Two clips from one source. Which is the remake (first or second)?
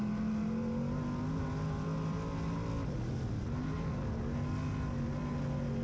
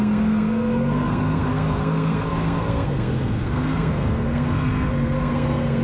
second